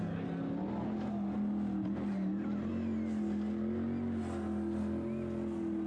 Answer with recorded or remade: recorded